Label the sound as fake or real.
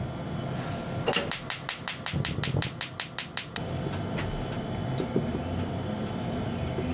real